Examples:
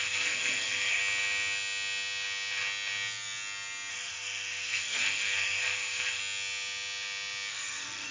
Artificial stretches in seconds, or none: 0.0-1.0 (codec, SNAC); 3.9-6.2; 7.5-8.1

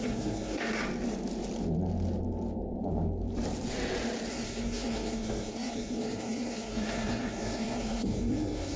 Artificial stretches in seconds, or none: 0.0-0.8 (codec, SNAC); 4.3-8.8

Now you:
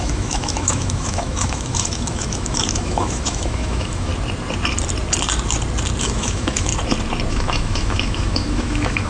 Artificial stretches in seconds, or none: 0.0-4.1 (autoencoder, DAC-VAE); 6.0-6.7; 7.3-9.1

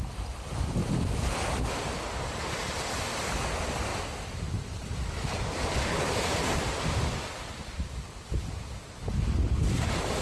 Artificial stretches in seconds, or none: 0.8-3.0 (vocoder, BigVGAN v2); 3.9-8.6

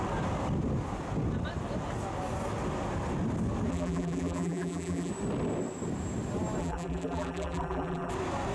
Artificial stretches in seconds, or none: 3.7-5.1 (vocoder, BigVGAN v2); 6.6-8.1

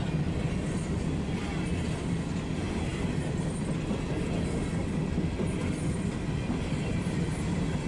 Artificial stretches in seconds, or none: none